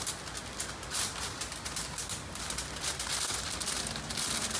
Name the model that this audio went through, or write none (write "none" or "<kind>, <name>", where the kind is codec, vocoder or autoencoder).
none